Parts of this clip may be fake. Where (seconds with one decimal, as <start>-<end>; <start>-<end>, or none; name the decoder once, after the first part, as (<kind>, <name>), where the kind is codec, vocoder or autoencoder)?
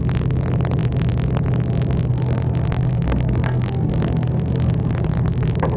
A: 2.1-4.7 (codec, SNAC)